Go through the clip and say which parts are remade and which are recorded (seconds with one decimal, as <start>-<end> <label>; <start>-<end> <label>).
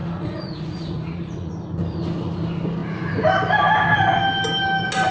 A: 0.0-1.5 remade; 1.5-5.1 recorded